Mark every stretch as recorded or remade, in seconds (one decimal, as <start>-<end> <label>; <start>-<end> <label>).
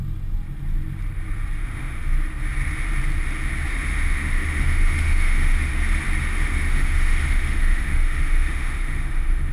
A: 0.0-1.6 recorded; 1.6-2.0 remade; 2.0-3.7 recorded; 3.7-5.7 remade; 5.7-6.3 recorded; 6.3-9.5 remade